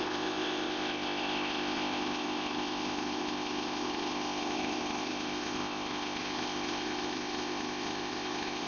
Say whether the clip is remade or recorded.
remade